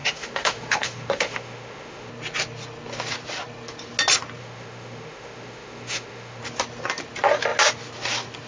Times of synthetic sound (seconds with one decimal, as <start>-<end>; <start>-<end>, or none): 0.0-2.1; 4.4-6.4